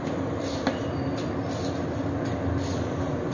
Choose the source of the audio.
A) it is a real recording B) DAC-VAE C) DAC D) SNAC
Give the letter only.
A